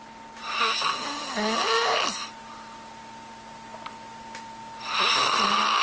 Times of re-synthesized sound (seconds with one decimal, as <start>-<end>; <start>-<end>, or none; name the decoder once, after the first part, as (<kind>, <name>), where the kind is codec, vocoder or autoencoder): none